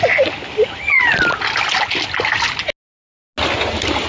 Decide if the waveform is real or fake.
real